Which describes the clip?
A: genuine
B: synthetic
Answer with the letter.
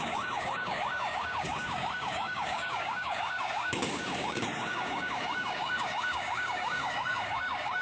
B